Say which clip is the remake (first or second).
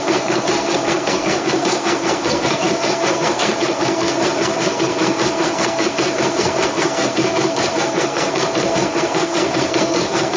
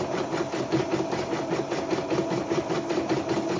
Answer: first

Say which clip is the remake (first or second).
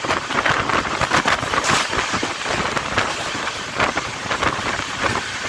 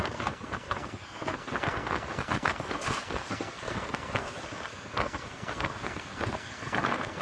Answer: second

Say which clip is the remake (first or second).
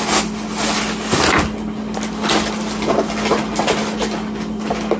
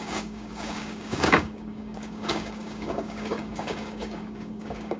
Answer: second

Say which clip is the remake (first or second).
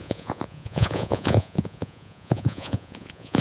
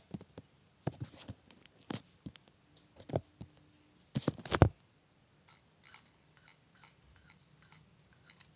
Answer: first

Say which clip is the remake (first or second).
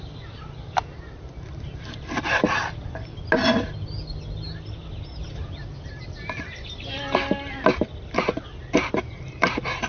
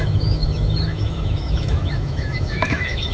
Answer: second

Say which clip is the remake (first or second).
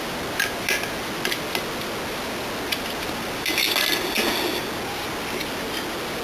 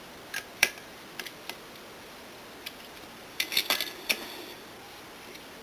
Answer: second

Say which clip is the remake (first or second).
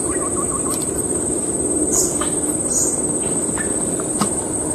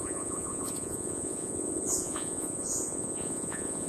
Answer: second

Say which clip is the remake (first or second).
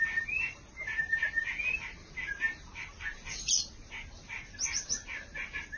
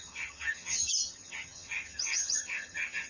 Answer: second